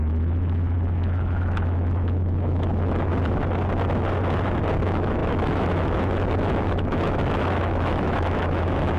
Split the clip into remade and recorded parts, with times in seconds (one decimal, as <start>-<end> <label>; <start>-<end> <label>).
0.0-3.1 remade; 3.1-4.8 recorded; 4.8-9.0 remade